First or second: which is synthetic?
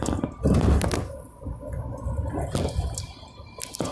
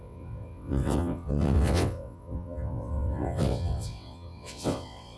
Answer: second